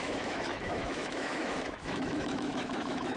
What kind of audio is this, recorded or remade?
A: remade